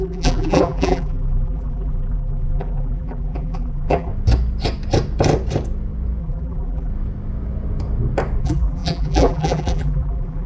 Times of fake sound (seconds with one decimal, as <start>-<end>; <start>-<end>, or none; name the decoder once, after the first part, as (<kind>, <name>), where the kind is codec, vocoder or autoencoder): 0.0-4.1 (vocoder, BigVGAN v2); 6.2-6.9; 8.4-10.5

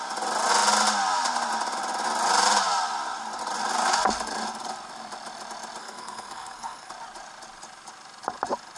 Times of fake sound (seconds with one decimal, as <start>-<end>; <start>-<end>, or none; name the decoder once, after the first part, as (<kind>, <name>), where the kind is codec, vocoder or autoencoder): 5.8-6.9 (codec, SNAC)

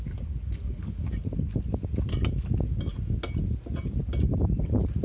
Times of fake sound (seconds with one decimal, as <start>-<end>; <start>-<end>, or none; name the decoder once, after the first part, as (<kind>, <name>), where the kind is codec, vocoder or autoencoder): none

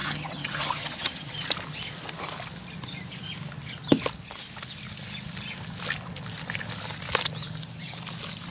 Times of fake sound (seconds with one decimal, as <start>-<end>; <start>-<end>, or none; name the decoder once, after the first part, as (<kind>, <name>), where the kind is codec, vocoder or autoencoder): 0.0-1.3 (vocoder, HiFi-GAN)

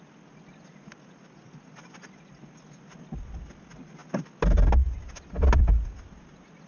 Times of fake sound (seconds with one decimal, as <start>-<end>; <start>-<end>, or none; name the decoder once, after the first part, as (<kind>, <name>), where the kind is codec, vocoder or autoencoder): none

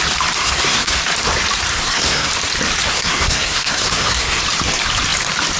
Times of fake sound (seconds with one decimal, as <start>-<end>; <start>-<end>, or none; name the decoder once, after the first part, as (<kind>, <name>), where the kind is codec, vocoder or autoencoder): 0.4-1.0 (codec, SNAC); 1.7-2.3; 2.9-4.4